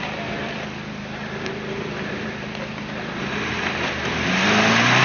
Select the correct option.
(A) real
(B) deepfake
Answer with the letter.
B